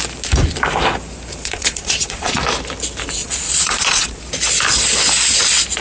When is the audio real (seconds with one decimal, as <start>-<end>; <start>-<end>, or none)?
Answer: 0.0-1.4; 2.4-3.2; 4.2-5.8